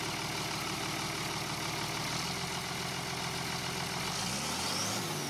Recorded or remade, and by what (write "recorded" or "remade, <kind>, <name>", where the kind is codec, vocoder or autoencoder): recorded